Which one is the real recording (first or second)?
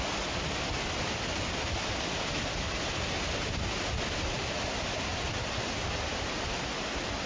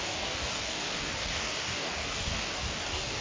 first